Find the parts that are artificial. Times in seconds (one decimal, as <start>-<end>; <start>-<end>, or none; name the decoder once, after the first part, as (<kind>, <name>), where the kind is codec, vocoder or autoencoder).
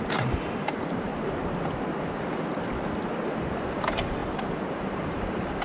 0.0-1.1 (vocoder, BigVGAN v2); 3.4-4.2; 4.7-5.6